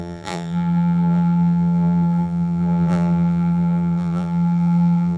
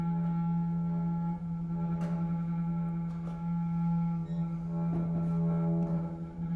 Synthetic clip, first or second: first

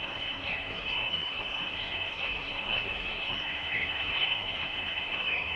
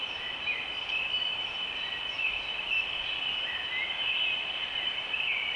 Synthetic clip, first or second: first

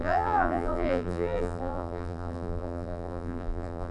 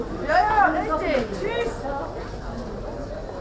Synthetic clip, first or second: first